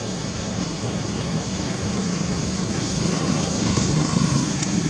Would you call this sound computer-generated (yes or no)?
yes